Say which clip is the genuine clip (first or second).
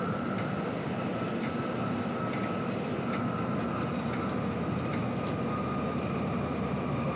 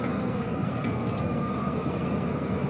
first